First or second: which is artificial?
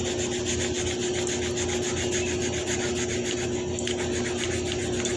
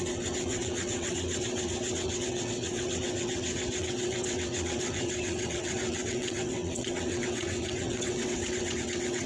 second